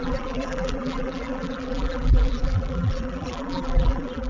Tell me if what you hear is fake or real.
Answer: fake